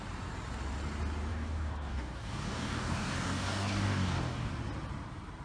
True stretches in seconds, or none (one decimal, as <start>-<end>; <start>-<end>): 0.0-1.3; 4.5-5.4